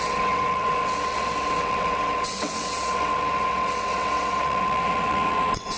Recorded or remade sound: remade